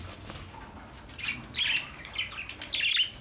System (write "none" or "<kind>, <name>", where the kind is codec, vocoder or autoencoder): none